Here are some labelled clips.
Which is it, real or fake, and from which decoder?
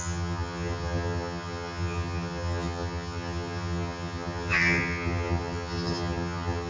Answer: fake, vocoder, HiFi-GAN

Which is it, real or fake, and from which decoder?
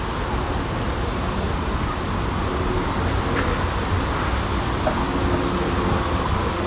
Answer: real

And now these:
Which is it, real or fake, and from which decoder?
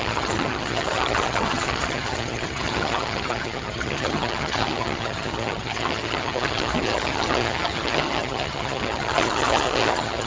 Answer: fake, vocoder, HiFi-GAN